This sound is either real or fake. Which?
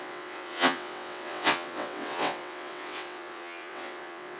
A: fake